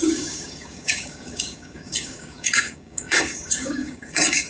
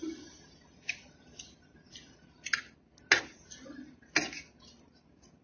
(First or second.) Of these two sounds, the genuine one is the second